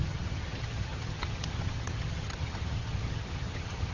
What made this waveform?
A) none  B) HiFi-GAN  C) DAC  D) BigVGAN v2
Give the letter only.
B